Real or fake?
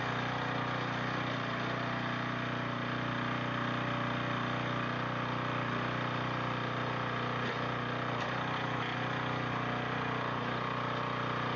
real